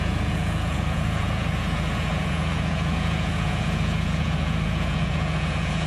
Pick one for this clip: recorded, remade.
remade